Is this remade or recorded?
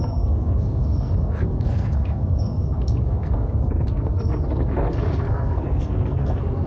remade